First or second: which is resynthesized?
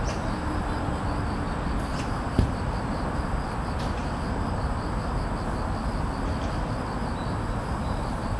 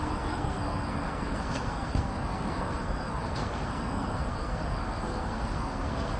second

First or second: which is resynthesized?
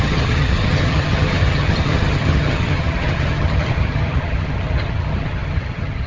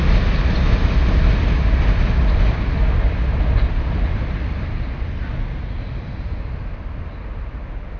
first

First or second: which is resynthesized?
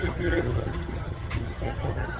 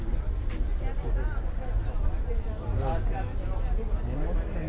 first